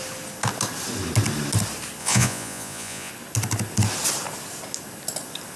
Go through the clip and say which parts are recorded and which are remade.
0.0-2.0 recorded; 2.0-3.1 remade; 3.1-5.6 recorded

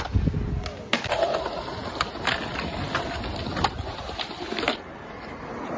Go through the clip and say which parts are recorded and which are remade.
0.0-5.8 recorded

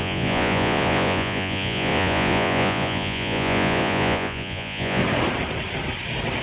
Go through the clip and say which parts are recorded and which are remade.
0.0-5.0 remade; 5.0-6.4 recorded

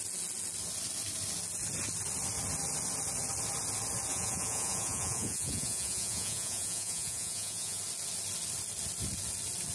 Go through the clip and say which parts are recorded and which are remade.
0.0-4.1 recorded; 4.1-7.8 remade; 7.8-9.7 recorded